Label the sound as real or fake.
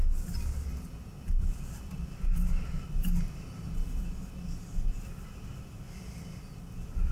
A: real